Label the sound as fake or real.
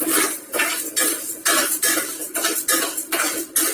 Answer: real